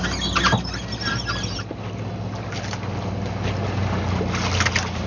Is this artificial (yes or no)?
no